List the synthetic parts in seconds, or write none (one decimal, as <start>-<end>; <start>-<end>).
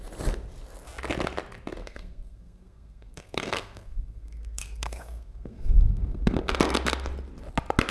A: 1.8-6.5